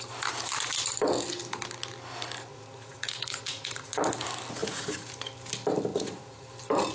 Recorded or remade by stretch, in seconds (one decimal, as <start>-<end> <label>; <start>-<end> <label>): 0.0-2.5 recorded; 2.5-4.0 remade; 4.0-4.6 recorded; 4.6-5.1 remade; 5.1-5.9 recorded; 5.9-6.5 remade; 6.5-6.9 recorded